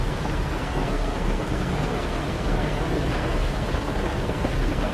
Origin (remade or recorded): remade